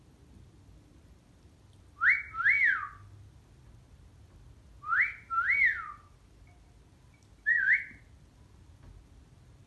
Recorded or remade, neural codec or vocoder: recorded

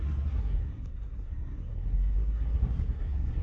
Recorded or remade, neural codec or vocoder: remade, codec, SNAC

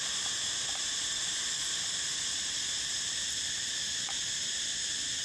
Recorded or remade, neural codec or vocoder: remade, vocoder, BigVGAN v2